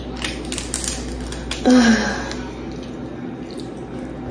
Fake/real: real